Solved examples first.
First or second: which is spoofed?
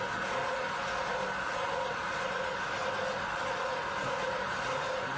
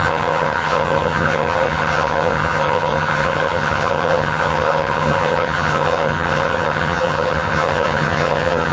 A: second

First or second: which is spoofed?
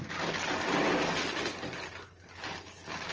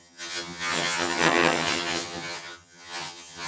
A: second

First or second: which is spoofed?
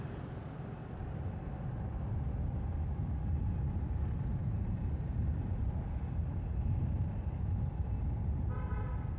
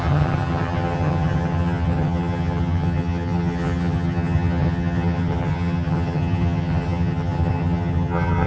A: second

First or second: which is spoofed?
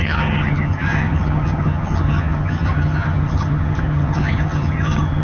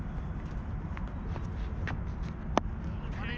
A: first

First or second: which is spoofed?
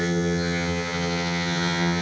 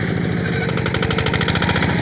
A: first